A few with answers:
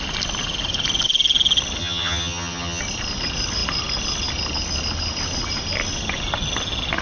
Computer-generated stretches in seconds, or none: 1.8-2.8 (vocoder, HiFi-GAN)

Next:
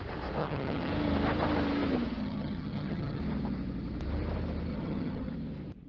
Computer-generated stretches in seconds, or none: 0.4-0.9 (vocoder, HiFi-GAN); 2.2-3.2; 4.7-5.3

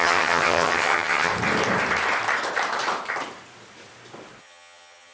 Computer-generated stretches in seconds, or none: 0.0-1.3 (vocoder, HiFi-GAN); 4.4-5.1

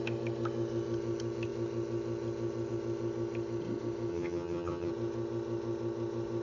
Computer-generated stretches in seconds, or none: 4.1-4.9 (vocoder, HiFi-GAN)

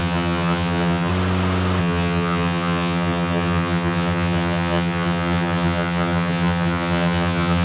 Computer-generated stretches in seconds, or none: 0.0-1.1 (vocoder, HiFi-GAN); 1.8-7.6

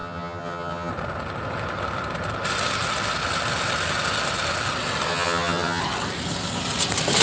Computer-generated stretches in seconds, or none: 0.0-0.9 (vocoder, HiFi-GAN); 5.1-5.8

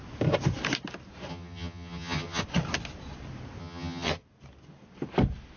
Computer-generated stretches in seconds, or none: 1.3-2.4 (vocoder, HiFi-GAN); 3.6-4.2